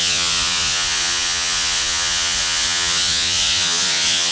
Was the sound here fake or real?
fake